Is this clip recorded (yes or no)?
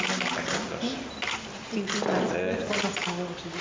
yes